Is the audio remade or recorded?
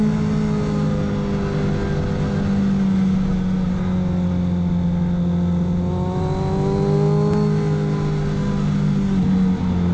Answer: recorded